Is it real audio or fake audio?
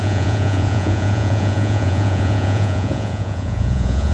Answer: fake